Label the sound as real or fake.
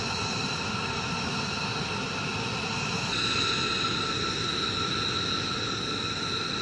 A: real